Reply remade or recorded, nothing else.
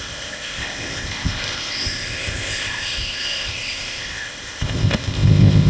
remade